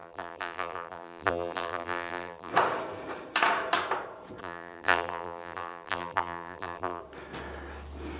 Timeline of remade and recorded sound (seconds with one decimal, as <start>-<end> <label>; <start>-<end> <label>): 0.0-2.5 remade; 2.5-4.4 recorded; 4.4-7.0 remade; 7.0-8.2 recorded

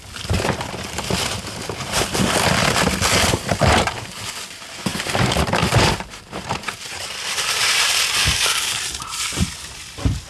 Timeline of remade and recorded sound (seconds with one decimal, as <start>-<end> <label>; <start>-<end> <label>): 0.0-4.9 recorded; 4.9-10.3 remade